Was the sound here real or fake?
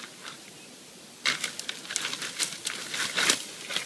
real